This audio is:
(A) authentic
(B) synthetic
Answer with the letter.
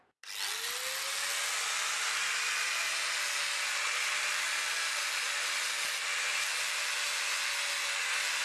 A